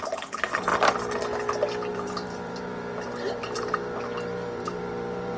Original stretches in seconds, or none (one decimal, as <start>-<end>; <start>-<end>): 0.0-1.9